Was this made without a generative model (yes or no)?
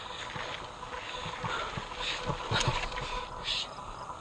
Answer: yes